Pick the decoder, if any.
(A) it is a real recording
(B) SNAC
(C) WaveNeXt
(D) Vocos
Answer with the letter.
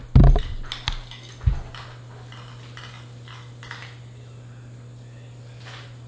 A